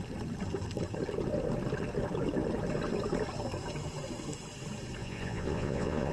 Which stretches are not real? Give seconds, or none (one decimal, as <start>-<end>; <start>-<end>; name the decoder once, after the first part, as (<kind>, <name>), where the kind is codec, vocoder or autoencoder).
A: 5.0-6.1 (vocoder, Vocos)